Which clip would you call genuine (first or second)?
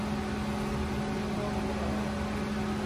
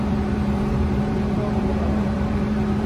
first